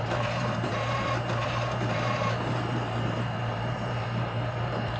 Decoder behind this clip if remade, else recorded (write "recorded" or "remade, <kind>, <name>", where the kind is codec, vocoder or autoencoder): remade, vocoder, BigVGAN v2